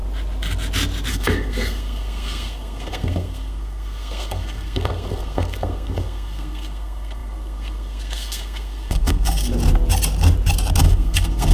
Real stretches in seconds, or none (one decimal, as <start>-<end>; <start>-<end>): 0.0-1.1; 9.5-10.8